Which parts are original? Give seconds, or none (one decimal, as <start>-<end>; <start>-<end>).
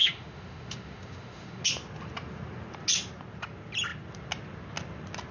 1.6-5.3